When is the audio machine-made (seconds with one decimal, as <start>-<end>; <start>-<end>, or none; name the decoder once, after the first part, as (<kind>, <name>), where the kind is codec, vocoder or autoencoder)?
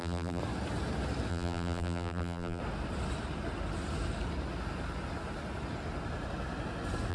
0.0-0.4 (vocoder, BigVGAN v2); 1.3-2.6